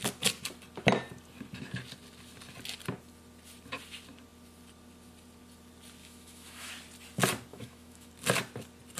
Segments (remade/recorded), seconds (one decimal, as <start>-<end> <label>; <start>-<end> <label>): 0.0-6.0 recorded; 6.0-6.7 remade; 6.7-7.5 recorded; 7.5-8.1 remade; 8.1-9.0 recorded